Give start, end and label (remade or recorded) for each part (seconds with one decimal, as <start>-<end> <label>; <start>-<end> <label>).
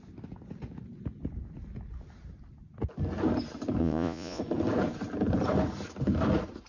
0.0-3.8 recorded; 3.8-4.4 remade; 4.4-6.7 recorded